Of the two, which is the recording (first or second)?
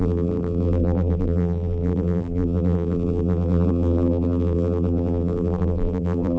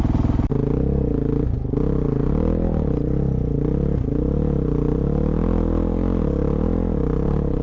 second